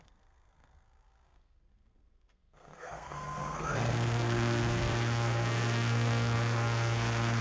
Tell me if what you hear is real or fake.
fake